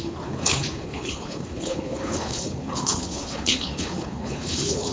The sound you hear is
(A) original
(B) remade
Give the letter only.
B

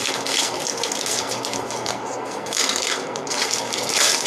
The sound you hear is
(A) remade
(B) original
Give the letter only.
A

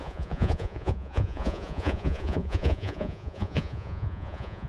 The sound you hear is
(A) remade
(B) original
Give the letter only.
A